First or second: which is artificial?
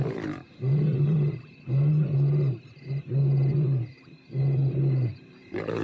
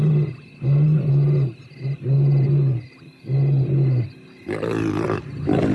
first